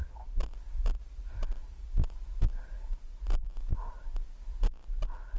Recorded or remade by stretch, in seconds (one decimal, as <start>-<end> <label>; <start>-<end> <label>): 0.0-5.4 recorded